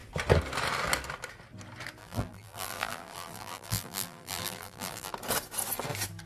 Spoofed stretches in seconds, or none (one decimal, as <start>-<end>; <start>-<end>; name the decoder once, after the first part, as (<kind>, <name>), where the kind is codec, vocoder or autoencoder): 2.0-5.1 (vocoder, BigVGAN v2)